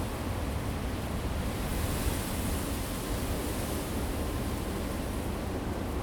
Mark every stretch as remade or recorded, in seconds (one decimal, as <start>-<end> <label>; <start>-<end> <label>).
0.0-6.0 recorded